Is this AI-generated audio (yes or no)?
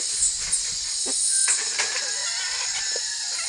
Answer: no